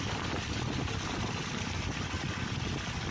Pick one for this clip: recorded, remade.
recorded